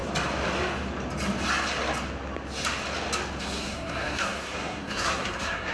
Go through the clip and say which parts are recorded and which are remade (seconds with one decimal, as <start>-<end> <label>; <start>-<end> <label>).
0.0-3.4 recorded; 3.4-5.7 remade